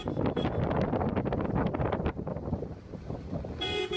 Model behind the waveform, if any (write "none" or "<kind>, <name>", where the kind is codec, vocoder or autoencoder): none